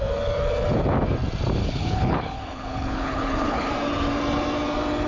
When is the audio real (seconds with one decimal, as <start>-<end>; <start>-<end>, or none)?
0.0-1.6; 3.7-5.1